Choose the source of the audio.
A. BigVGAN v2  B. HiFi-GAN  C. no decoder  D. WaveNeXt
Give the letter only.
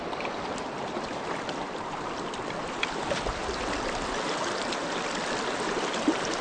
C